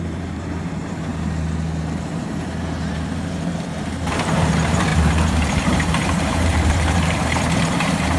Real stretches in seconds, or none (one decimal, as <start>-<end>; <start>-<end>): 1.1-2.8